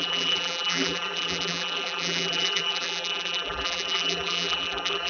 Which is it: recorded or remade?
remade